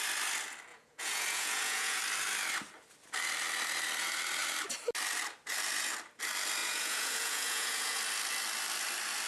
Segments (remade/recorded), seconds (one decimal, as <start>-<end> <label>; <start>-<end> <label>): 0.0-0.7 recorded; 0.7-2.0 remade; 2.0-6.6 recorded; 6.6-8.0 remade; 8.0-9.3 recorded